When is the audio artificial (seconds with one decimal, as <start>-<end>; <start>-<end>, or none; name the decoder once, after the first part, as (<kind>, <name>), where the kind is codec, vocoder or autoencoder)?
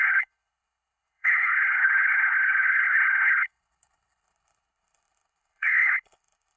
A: 0.0-6.6 (codec, HILCodec)